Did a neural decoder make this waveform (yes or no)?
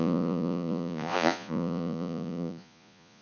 yes